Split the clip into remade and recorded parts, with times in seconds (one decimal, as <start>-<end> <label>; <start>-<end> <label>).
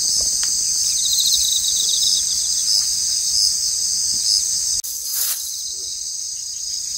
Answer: 0.0-5.1 recorded; 5.1-5.7 remade; 5.7-7.0 recorded